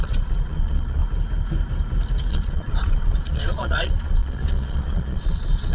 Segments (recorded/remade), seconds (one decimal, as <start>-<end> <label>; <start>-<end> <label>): 0.0-1.0 remade; 1.0-2.3 recorded; 2.3-5.7 remade